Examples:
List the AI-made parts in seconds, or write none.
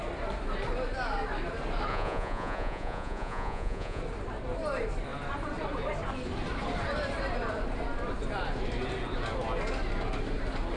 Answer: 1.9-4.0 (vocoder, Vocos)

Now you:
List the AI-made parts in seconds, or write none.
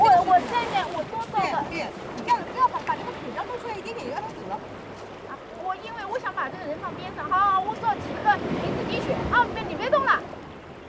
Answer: 0.8-3.5 (vocoder, BigVGAN v2); 8.2-9.0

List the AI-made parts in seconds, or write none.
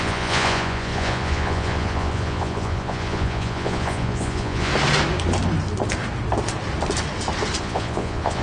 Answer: 0.0-4.7 (vocoder, Vocos); 7.6-8.4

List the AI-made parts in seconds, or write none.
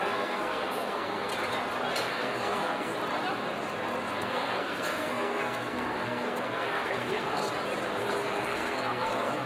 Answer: 0.0-1.3 (codec, SNAC); 2.0-2.9; 4.1-7.4; 8.0-9.5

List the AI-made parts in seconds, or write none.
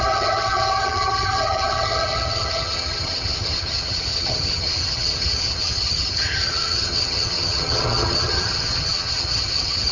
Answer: 0.0-9.9 (vocoder, HiFi-GAN)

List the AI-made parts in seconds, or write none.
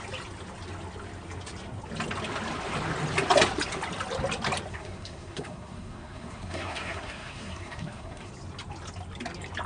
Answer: 4.7-8.3 (codec, SNAC)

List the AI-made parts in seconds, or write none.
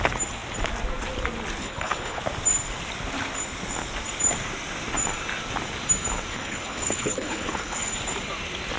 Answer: 1.6-2.2 (codec, HILCodec); 6.3-7.9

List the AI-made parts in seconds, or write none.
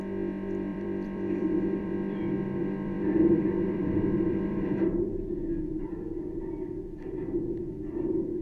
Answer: 0.7-2.2 (vocoder, BigVGAN v2); 2.6-4.9